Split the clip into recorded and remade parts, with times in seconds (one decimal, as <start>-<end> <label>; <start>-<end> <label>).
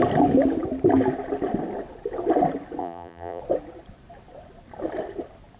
0.0-2.8 recorded; 2.8-3.4 remade; 3.4-5.6 recorded